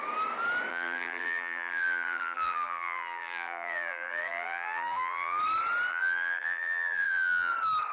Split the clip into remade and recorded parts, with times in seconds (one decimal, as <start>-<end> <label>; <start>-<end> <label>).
0.0-0.7 recorded; 0.7-5.4 remade; 5.4-5.9 recorded; 5.9-7.5 remade; 7.5-7.9 recorded